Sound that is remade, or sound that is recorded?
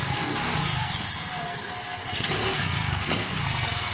remade